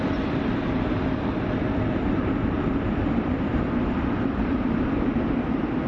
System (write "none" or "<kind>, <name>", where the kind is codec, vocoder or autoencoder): vocoder, BigVGAN v2